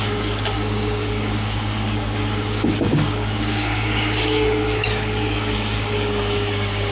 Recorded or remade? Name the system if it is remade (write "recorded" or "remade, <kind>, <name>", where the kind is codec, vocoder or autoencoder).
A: remade, codec, DAC